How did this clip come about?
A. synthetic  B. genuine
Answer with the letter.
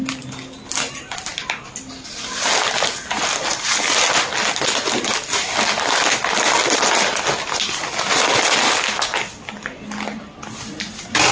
B